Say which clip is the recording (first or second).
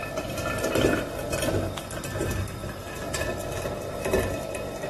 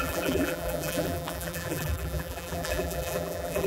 first